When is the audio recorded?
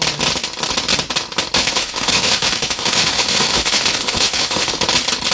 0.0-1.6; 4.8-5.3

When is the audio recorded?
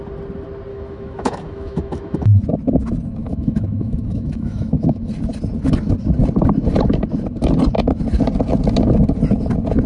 0.0-0.7; 2.4-3.2; 5.1-9.9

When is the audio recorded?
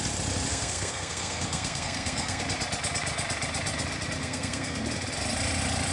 0.0-0.5; 2.4-4.2; 4.8-5.9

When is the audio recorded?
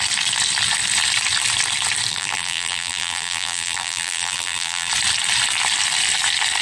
0.0-2.1; 4.9-6.6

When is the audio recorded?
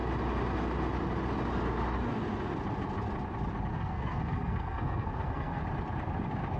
0.0-3.7; 5.6-6.6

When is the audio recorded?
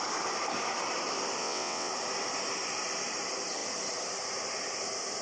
0.0-1.4; 1.9-5.2